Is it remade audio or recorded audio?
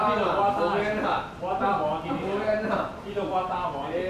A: recorded